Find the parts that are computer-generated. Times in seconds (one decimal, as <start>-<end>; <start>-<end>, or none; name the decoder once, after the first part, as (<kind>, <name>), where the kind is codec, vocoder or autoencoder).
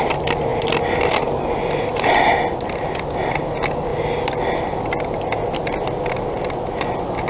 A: none